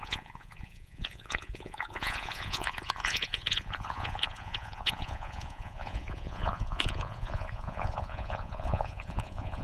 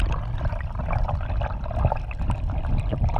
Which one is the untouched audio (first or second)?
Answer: second